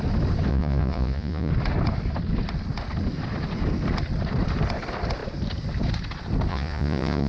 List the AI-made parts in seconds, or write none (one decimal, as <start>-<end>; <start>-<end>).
0.5-1.5; 6.5-7.3